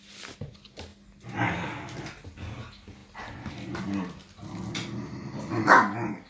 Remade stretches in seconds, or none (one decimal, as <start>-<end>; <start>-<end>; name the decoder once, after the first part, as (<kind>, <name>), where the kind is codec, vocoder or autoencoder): 5.6-6.3 (codec, DAC)